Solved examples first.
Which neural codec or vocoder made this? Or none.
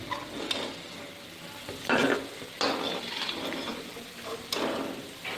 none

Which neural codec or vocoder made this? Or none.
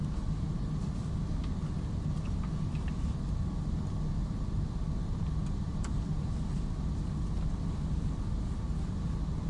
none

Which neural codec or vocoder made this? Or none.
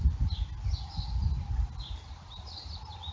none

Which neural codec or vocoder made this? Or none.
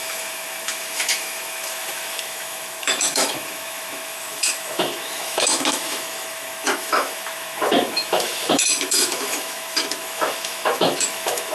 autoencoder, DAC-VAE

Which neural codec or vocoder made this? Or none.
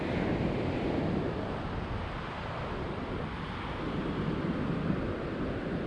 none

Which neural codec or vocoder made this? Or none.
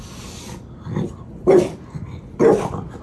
none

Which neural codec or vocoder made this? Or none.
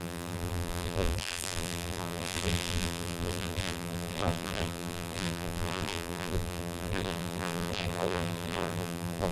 vocoder, BigVGAN v2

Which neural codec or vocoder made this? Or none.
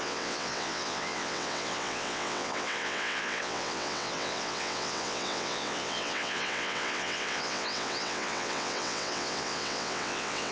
vocoder, WaveNeXt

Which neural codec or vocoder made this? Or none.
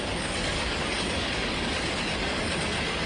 codec, DAC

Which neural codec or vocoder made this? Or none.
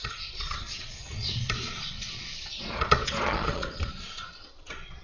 vocoder, Vocos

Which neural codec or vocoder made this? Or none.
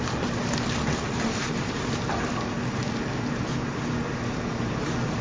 vocoder, BigVGAN v2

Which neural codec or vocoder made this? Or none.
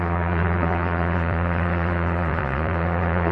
vocoder, Vocos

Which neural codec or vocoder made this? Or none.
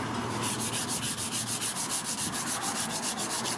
none